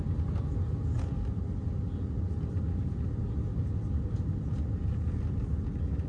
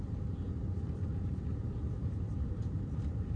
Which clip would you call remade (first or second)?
second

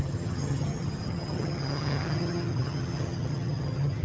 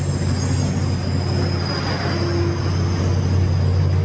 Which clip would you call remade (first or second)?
first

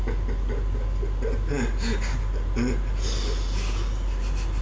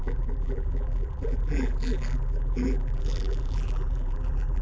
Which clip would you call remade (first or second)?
second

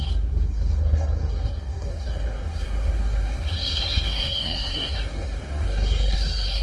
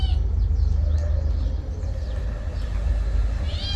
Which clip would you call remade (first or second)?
first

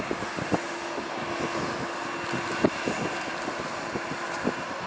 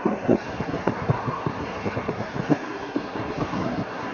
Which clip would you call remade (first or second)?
second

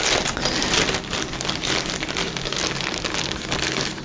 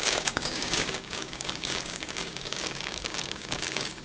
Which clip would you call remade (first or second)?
second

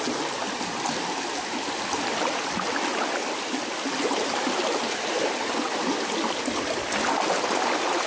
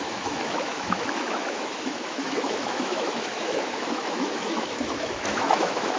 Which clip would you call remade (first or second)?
second